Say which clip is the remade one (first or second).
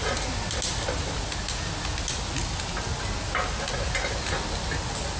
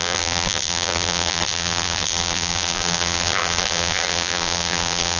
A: second